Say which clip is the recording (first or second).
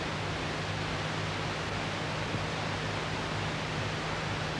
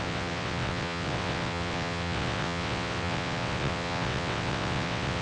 first